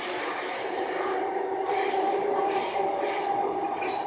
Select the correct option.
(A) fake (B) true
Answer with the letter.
B